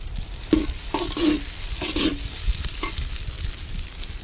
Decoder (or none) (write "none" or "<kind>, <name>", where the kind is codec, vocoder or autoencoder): none